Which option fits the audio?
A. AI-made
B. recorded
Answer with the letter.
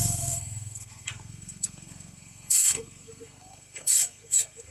A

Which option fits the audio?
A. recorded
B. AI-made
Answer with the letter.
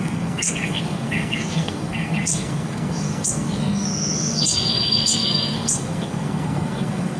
B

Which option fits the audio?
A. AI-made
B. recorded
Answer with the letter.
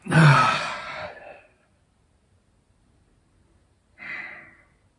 B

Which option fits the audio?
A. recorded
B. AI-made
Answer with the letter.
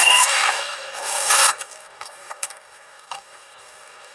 B